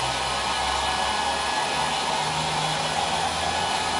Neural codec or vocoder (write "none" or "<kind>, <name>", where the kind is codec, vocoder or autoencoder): none